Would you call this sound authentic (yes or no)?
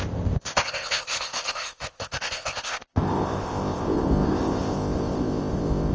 no